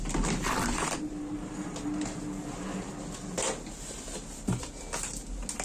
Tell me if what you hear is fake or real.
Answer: real